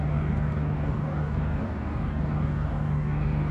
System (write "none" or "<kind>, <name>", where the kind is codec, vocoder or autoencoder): codec, DAC